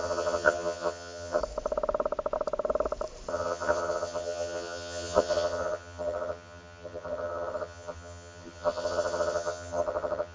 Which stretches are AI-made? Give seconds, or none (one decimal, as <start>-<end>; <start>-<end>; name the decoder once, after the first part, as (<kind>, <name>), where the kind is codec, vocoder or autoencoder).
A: 0.0-1.4 (vocoder, HiFi-GAN); 3.3-10.3